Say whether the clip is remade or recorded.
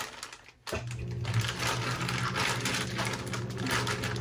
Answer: recorded